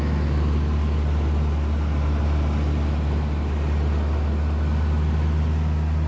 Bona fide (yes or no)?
yes